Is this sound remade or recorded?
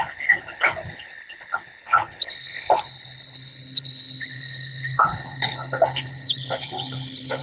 remade